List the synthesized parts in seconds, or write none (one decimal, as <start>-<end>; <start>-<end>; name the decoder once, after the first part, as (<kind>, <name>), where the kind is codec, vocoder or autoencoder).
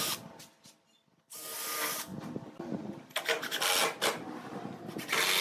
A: none